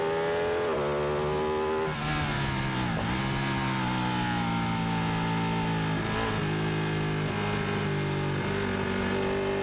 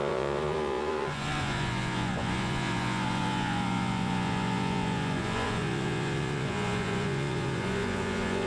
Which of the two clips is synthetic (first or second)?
second